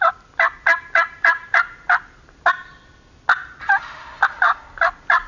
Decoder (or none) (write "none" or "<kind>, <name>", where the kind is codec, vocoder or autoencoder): none